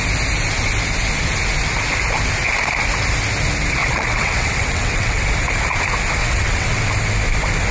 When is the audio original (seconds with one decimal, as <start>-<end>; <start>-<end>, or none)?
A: 0.0-3.8; 5.2-6.2; 6.8-7.7